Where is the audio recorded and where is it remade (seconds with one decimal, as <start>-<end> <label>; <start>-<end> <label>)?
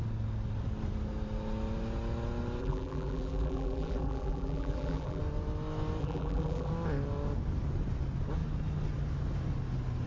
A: 0.0-2.6 recorded; 2.6-5.2 remade; 5.2-6.0 recorded; 6.0-6.7 remade; 6.7-10.1 recorded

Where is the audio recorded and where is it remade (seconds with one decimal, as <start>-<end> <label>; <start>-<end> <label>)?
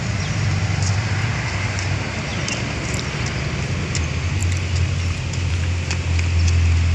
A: 0.0-6.9 recorded